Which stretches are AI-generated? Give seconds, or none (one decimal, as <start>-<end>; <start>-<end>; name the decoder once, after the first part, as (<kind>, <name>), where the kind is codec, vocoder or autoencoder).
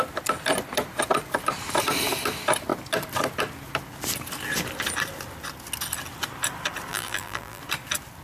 6.9-7.6 (vocoder, BigVGAN v2)